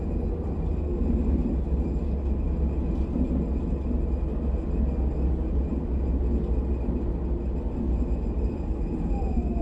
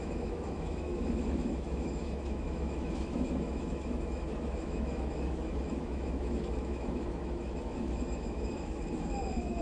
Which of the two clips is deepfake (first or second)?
second